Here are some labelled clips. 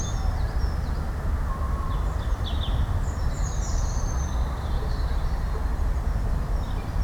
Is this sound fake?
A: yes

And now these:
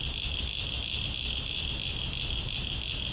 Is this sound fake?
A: no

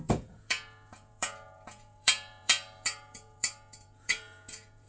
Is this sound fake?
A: yes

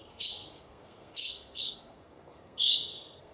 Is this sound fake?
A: yes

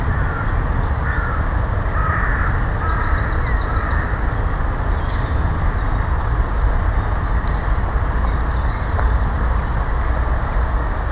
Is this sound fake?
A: no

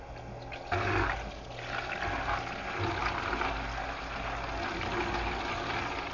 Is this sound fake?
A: no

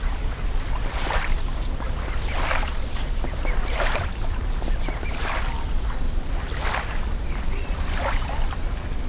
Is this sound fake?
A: no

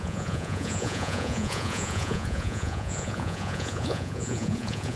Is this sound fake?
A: yes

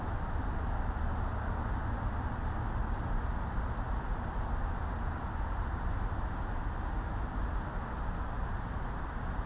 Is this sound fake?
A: no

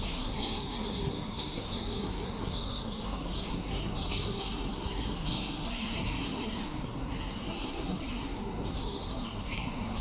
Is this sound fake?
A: yes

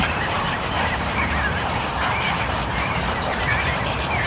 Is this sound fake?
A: yes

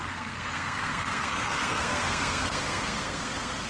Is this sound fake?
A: yes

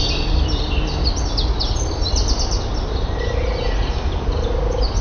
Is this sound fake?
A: no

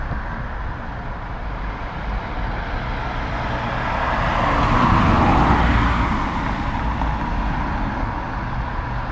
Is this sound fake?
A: no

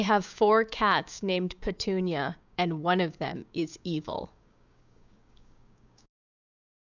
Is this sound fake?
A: yes